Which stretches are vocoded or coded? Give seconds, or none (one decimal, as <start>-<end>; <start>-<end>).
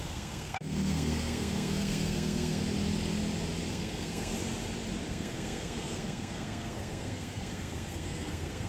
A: 0.0-2.6; 3.7-4.3; 5.1-8.7